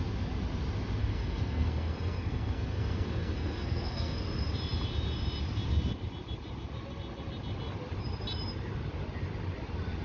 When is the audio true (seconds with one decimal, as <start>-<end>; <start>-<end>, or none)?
0.0-1.0; 4.2-10.0